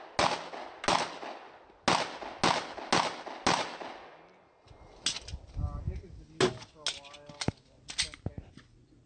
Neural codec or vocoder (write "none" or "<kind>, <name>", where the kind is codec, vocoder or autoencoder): none